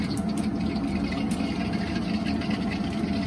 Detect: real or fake real